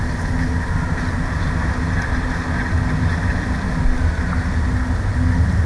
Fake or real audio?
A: real